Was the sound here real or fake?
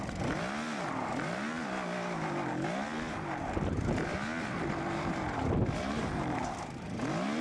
real